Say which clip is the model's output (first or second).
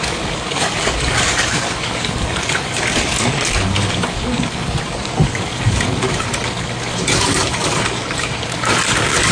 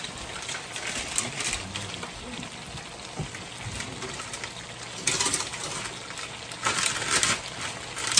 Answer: first